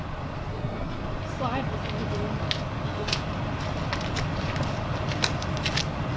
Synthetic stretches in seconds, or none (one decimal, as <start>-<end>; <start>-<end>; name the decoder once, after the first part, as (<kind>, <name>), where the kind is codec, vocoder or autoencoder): 0.5-1.0 (codec, SNAC)